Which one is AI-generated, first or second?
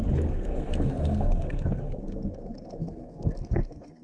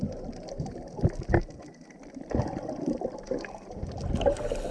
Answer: first